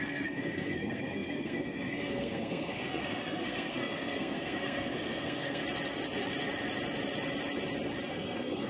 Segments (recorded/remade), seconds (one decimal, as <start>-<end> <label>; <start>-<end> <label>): 0.0-5.6 remade; 5.6-8.1 recorded; 8.1-8.7 remade